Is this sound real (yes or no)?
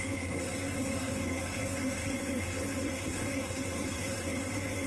no